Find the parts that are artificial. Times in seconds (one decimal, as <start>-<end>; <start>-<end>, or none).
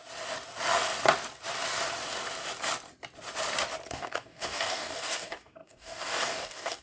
3.9-6.8